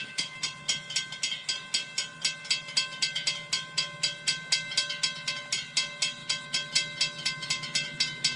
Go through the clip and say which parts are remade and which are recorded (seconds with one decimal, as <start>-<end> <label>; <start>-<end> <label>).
0.0-8.4 recorded